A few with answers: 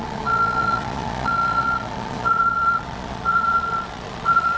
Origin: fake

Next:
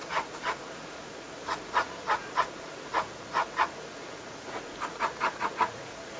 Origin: fake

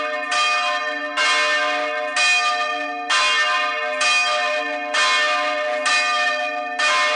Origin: real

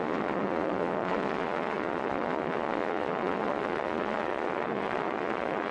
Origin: fake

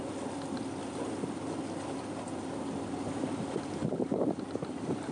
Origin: real